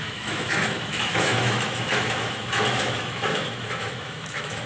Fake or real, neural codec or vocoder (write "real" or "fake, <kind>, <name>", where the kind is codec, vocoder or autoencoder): fake, autoencoder, DAC-VAE